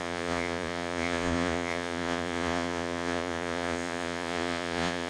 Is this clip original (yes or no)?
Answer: no